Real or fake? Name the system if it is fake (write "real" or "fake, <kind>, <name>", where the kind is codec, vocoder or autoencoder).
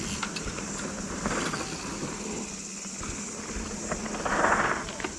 real